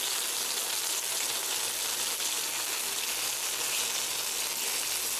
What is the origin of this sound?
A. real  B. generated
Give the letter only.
A